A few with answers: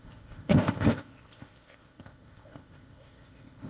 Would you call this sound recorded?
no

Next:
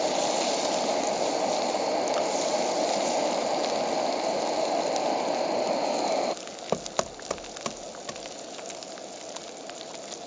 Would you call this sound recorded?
yes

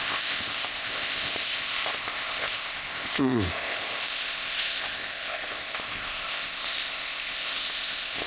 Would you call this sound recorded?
no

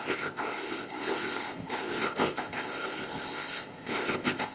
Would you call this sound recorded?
no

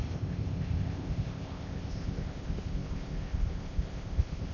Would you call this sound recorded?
no